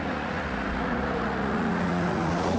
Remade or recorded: remade